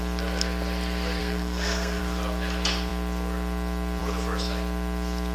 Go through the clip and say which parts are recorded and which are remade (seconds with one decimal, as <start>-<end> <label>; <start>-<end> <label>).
0.0-1.2 recorded; 1.2-2.0 remade; 2.0-5.3 recorded